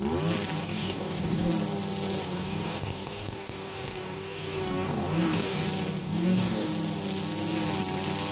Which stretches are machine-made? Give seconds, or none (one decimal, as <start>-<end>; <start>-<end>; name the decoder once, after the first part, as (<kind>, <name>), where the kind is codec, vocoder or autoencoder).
0.6-1.5 (codec, DAC); 2.2-5.6; 6.0-6.7